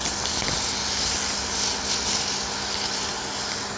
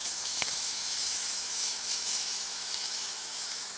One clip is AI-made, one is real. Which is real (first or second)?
first